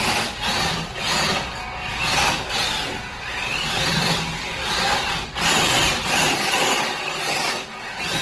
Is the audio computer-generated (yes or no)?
no